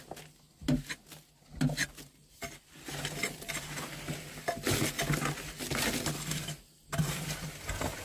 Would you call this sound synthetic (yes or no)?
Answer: no